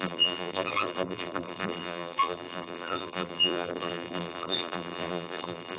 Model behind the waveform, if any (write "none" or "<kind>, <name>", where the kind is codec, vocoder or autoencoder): vocoder, BigVGAN v2